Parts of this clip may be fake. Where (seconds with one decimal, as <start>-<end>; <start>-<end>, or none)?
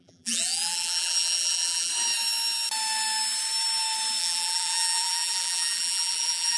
0.0-1.9; 4.2-6.6